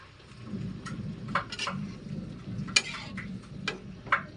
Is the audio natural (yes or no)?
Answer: yes